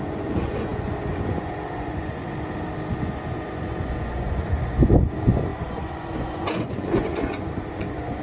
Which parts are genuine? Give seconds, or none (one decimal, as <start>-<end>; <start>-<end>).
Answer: 2.2-2.9